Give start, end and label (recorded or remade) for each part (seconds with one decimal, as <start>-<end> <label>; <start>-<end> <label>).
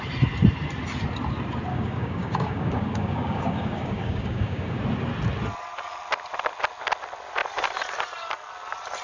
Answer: 0.0-1.7 recorded; 1.7-4.8 remade; 4.8-9.0 recorded